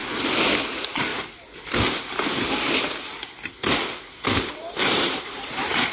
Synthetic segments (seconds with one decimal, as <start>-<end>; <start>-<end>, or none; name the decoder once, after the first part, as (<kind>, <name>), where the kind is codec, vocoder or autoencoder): 0.7-1.1 (vocoder, BigVGAN v2); 4.6-5.9